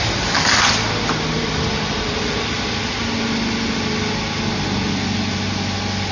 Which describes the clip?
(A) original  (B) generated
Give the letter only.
A